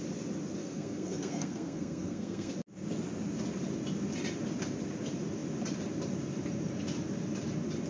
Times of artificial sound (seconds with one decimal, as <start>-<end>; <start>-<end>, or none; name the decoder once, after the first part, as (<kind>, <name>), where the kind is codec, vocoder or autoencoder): 0.6-2.5 (codec, SNAC)